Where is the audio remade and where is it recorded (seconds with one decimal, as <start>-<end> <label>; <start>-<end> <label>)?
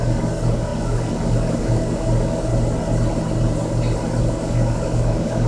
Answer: 0.0-2.5 remade; 2.5-4.2 recorded; 4.2-5.5 remade